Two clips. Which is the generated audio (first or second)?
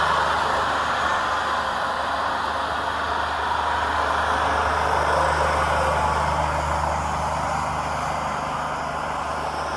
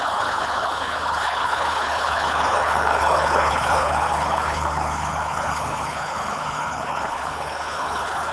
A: second